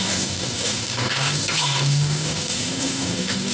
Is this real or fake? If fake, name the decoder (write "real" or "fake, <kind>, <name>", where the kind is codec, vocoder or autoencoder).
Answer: fake, codec, DAC